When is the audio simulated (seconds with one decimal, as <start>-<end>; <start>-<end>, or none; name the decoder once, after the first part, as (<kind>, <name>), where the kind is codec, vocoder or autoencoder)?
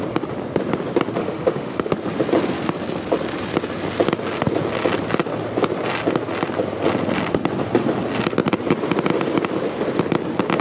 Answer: 1.2-1.9 (autoencoder, DAC-VAE)